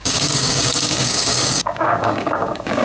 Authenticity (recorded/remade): remade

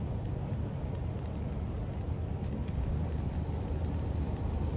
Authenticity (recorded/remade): recorded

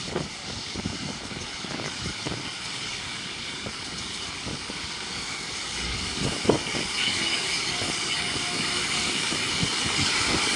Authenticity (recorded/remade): remade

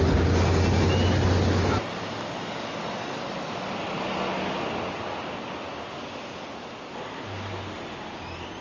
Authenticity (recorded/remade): recorded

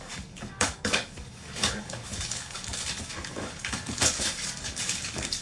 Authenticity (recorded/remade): remade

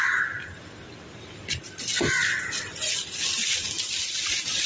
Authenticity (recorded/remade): recorded